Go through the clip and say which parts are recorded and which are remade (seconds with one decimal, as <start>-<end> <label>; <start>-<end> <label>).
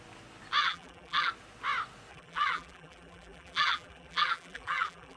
0.0-0.6 recorded; 0.6-1.3 remade; 1.3-2.1 recorded; 2.1-5.2 remade